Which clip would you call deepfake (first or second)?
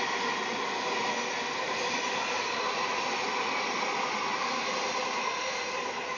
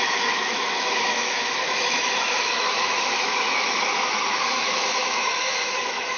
second